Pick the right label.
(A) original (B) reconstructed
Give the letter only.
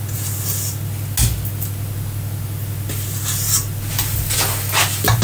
A